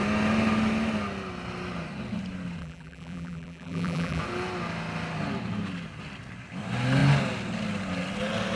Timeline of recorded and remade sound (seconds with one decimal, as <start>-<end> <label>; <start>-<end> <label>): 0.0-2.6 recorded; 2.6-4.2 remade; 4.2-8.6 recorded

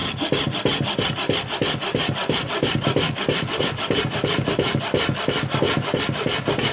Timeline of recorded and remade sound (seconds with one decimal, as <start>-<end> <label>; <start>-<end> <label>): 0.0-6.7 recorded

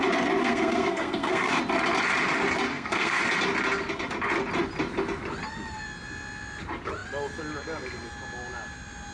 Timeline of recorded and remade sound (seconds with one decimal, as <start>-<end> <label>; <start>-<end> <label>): 0.0-0.4 recorded; 0.4-1.6 remade; 1.6-2.7 recorded; 2.7-3.2 remade; 3.2-9.1 recorded

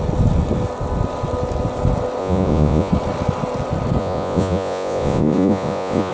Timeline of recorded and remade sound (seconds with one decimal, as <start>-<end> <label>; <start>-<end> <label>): 0.0-2.2 recorded; 2.2-2.9 remade; 2.9-4.0 recorded; 4.0-6.1 remade